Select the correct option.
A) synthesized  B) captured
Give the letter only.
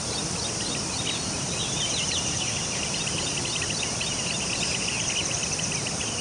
A